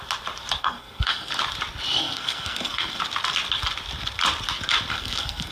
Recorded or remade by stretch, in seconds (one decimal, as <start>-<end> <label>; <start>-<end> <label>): 0.0-0.6 recorded; 0.6-1.3 remade; 1.3-2.0 recorded; 2.0-3.0 remade; 3.0-4.9 recorded; 4.9-5.5 remade